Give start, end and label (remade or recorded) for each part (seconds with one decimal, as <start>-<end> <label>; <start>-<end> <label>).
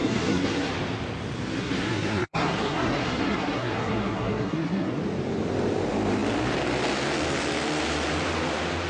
0.0-0.7 remade; 0.7-1.6 recorded; 1.6-5.0 remade; 5.0-8.9 recorded